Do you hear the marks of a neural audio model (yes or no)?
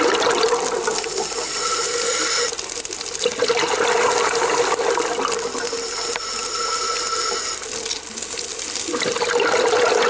no